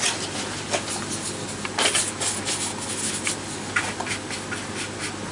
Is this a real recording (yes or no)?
yes